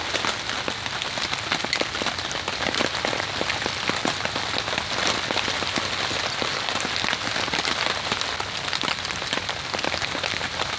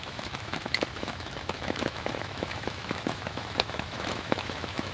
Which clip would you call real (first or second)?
first